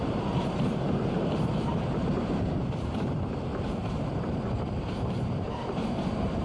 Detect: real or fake fake